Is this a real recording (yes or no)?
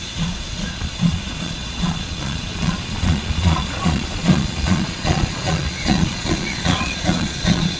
no